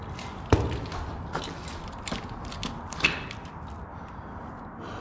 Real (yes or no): yes